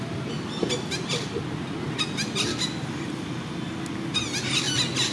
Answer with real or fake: real